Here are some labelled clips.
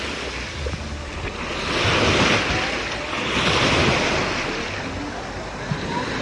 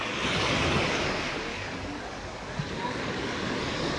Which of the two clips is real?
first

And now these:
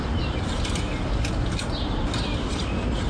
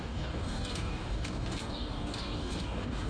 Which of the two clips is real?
first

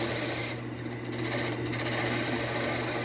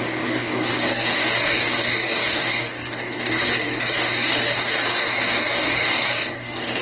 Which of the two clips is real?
first